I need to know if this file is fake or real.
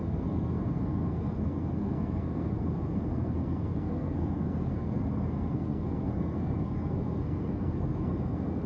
fake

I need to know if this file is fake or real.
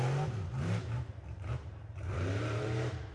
fake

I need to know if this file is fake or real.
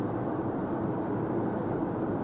real